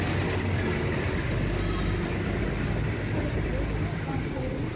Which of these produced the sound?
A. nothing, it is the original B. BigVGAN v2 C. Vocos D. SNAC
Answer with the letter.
A